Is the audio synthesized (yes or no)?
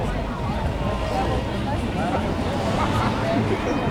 no